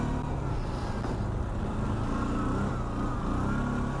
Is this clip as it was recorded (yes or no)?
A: yes